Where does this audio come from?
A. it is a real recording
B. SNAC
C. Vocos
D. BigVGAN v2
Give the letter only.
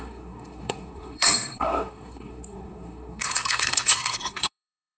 B